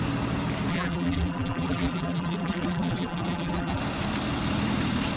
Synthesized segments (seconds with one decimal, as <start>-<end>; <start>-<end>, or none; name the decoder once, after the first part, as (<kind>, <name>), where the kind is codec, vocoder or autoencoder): 0.7-3.8 (vocoder, BigVGAN v2)